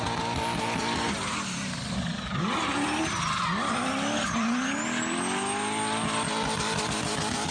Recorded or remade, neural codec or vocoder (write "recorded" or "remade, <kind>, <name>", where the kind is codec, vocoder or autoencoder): recorded